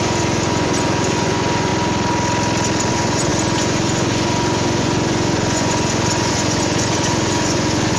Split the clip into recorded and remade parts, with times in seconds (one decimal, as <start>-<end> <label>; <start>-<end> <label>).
0.0-1.7 remade; 1.7-2.9 recorded; 2.9-8.0 remade